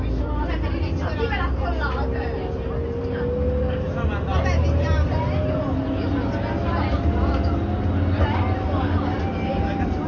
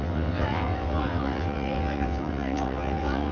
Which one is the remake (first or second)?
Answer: second